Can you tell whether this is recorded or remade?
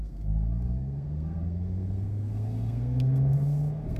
remade